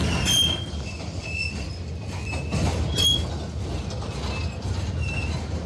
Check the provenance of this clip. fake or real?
real